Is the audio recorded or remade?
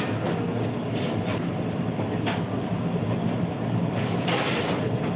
recorded